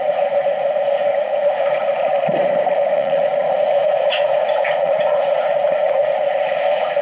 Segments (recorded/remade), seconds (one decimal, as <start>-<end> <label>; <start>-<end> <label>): 0.0-2.1 remade; 2.1-2.7 recorded; 2.7-7.0 remade